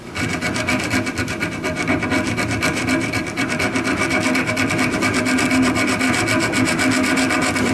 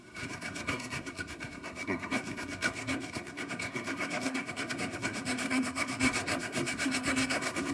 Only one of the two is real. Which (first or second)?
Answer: first